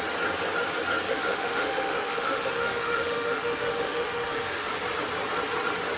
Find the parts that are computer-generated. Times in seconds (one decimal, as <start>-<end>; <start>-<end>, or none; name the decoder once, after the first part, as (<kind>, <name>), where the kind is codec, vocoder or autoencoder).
1.1-4.7 (autoencoder, DAC-VAE)

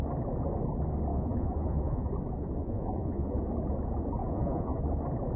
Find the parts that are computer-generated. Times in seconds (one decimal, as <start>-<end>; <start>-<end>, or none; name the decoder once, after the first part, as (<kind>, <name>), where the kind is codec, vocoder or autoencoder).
1.1-2.1 (vocoder, Vocos); 2.6-3.4; 4.2-4.8